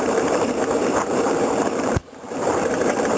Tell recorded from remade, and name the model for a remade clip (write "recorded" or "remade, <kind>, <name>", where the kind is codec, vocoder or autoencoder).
remade, vocoder, BigVGAN v2